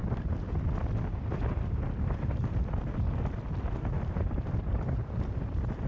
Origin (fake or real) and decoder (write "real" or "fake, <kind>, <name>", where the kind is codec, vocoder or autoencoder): real